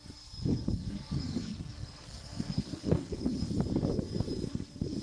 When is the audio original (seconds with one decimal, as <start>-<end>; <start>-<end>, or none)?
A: 0.0-0.5; 3.5-5.0